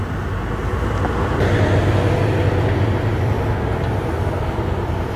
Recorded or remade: recorded